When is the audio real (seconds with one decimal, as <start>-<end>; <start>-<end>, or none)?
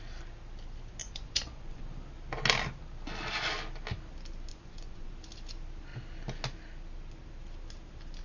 0.0-1.0; 1.8-4.5; 5.1-8.2